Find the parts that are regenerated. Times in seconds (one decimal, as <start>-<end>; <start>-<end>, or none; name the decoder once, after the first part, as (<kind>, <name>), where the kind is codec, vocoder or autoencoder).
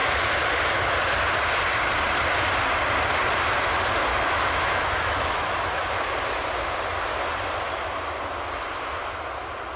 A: 4.1-6.1 (autoencoder, DAC-VAE)